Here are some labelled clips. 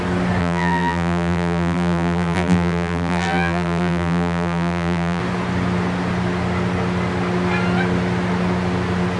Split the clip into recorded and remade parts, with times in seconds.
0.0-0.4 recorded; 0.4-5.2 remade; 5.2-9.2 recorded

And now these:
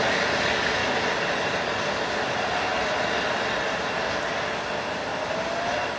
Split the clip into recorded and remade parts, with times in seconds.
0.0-0.8 recorded; 0.8-1.9 remade; 1.9-6.0 recorded

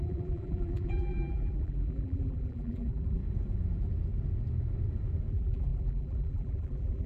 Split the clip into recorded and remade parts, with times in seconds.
0.0-3.2 remade; 3.2-5.3 recorded; 5.3-7.1 remade